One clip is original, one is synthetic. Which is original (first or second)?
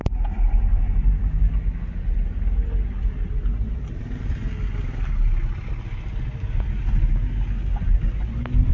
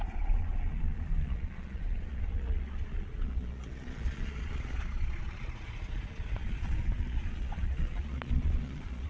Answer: first